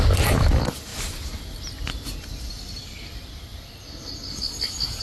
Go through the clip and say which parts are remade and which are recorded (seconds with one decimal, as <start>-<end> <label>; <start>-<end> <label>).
0.0-5.0 recorded